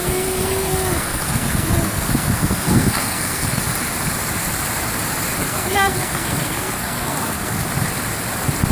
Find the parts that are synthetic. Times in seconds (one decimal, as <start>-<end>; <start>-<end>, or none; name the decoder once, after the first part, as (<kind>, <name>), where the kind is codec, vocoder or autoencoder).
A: 0.0-3.6 (codec, SNAC); 5.4-7.7

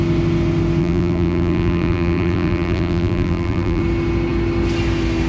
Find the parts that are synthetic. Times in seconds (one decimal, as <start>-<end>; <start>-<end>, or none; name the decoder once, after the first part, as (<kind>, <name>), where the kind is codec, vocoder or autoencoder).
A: 0.8-3.8 (vocoder, BigVGAN v2)

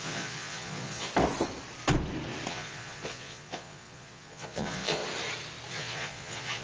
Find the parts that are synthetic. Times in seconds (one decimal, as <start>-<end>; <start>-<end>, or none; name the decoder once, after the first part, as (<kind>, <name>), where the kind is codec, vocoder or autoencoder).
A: 0.0-1.1 (vocoder, Vocos); 2.5-5.0; 5.7-6.6